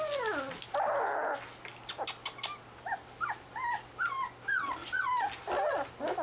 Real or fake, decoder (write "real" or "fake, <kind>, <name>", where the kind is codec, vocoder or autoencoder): real